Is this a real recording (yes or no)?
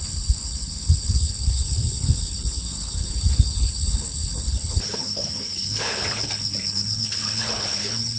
no